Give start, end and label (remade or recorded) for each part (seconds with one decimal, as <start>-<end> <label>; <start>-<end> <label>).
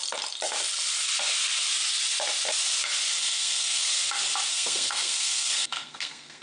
0.0-3.1 recorded; 3.1-4.0 remade; 4.0-4.5 recorded; 4.5-6.4 remade